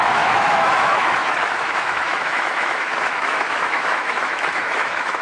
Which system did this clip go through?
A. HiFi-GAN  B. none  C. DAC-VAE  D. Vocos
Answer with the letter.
C